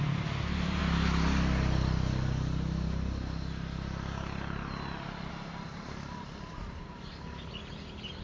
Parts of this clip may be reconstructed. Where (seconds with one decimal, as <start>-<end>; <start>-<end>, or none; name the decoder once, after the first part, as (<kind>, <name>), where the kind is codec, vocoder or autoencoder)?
0.0-0.8 (vocoder, BigVGAN v2); 5.3-8.2